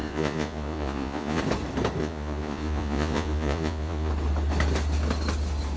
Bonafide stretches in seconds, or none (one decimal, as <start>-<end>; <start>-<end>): 1.4-2.0; 4.1-5.8